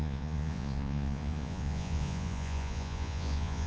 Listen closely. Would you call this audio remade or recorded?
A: remade